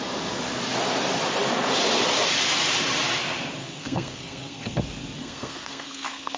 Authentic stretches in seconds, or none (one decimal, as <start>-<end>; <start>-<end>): 0.0-3.6; 4.8-5.2